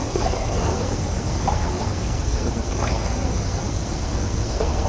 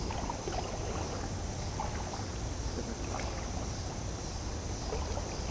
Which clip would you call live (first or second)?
second